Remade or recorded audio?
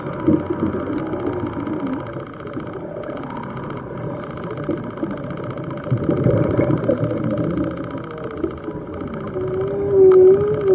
recorded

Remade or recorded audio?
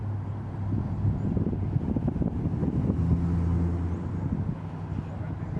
recorded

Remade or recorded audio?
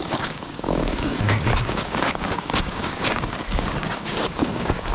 remade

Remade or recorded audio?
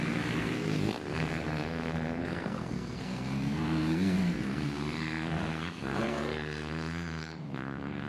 remade